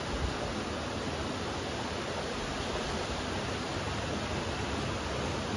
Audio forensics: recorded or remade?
recorded